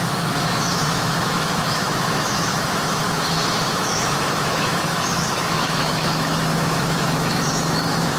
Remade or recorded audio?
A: remade